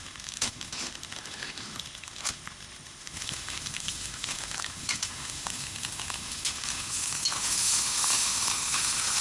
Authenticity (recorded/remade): remade